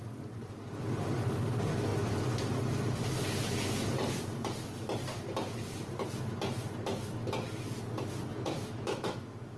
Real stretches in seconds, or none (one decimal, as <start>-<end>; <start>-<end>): 0.0-8.3